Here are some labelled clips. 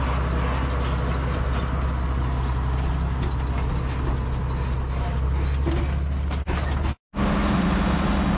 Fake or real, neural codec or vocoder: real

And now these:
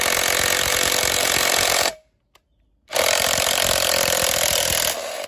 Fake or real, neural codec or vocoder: real